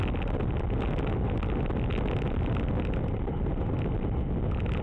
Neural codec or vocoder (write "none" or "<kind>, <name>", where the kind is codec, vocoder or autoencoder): none